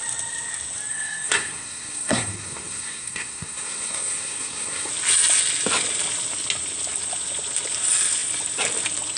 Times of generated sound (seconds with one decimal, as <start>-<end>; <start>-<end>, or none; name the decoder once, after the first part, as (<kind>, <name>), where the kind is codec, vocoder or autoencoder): 0.9-4.9 (codec, SNAC)